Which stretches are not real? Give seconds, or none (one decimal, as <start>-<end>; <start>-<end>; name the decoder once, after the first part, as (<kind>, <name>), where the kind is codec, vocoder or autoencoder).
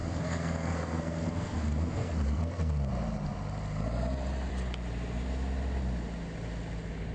0.0-2.9 (codec, SNAC)